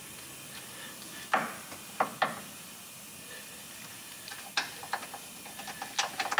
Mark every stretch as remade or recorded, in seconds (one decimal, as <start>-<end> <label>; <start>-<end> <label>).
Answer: 0.0-6.4 recorded